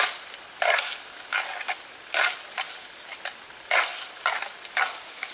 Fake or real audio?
real